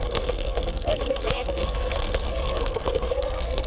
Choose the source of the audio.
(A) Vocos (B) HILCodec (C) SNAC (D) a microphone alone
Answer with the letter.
C